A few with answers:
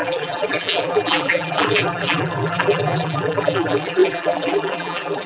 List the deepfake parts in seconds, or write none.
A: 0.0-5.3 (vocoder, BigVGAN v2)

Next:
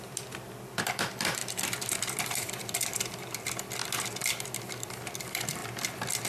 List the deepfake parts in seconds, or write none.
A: 0.0-3.8 (vocoder, BigVGAN v2); 4.8-5.6

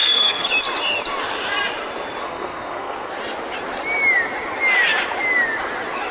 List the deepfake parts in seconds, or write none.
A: 0.0-0.5 (codec, SNAC); 2.2-3.1

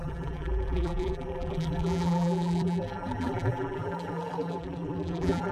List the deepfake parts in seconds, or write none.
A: 0.0-5.5 (vocoder, BigVGAN v2)

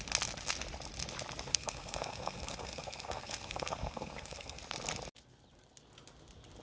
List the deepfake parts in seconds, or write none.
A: 1.5-4.6 (codec, SNAC)